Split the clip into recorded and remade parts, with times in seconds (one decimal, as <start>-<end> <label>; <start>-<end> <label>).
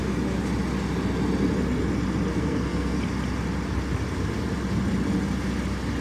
0.0-2.3 recorded; 2.3-3.0 remade; 3.0-6.0 recorded